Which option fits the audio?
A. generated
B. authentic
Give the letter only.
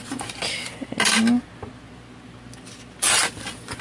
B